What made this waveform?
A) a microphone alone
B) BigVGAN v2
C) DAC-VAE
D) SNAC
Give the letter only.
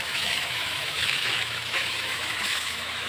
C